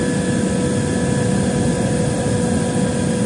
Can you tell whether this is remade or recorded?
recorded